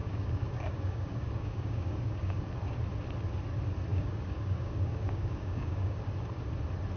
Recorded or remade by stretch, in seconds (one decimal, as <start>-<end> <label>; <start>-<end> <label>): 0.0-2.4 remade; 2.4-3.9 recorded; 3.9-6.1 remade; 6.1-7.0 recorded

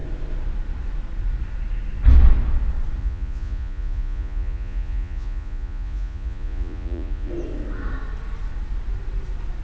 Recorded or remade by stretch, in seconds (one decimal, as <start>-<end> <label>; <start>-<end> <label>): 0.0-3.0 recorded; 3.0-7.3 remade; 7.3-9.6 recorded